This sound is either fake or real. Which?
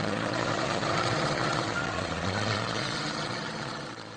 fake